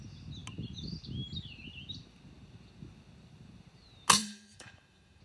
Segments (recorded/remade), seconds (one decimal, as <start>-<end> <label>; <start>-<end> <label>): 0.0-4.2 recorded; 4.2-5.2 remade